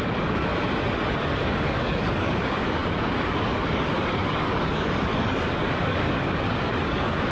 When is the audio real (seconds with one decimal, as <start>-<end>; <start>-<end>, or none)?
0.5-1.2